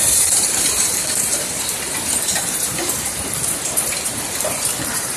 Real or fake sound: fake